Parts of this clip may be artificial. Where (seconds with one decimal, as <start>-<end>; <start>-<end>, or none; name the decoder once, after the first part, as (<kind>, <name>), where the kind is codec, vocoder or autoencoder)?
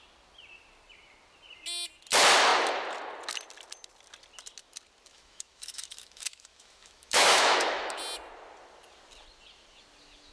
5.1-8.0 (autoencoder, DAC-VAE)